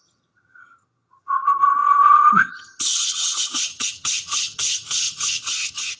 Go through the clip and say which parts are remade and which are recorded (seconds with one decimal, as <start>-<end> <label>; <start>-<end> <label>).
0.0-6.0 remade